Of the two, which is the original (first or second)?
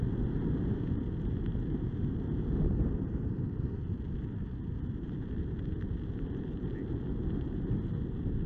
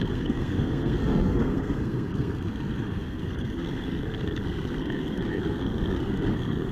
first